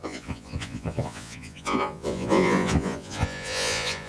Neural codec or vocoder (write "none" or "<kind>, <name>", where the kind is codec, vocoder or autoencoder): vocoder, Vocos